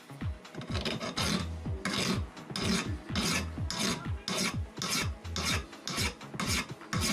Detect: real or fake real